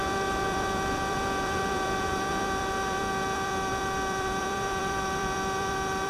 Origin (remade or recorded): remade